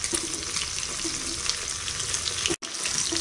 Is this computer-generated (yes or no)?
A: no